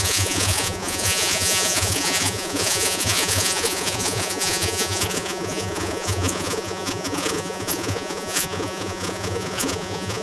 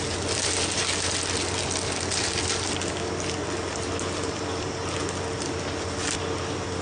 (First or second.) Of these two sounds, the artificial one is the first